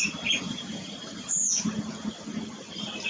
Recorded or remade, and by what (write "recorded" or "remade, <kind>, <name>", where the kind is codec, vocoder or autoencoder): recorded